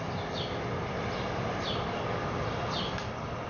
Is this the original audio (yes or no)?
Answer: yes